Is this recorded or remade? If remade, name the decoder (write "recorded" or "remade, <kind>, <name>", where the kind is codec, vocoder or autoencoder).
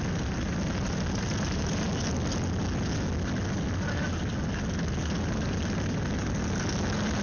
recorded